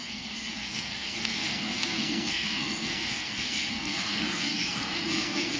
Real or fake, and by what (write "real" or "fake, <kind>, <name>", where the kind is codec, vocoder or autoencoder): fake, codec, SNAC